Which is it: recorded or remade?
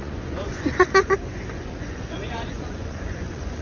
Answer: remade